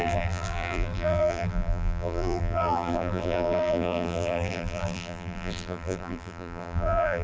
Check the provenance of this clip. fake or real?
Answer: fake